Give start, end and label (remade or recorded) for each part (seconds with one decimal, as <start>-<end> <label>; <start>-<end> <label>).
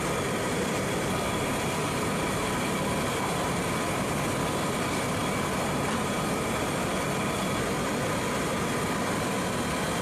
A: 0.0-5.2 recorded; 5.2-6.9 remade; 6.9-10.0 recorded